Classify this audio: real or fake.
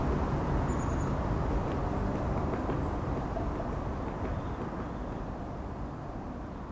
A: real